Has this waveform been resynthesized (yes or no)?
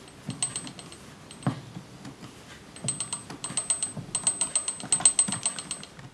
no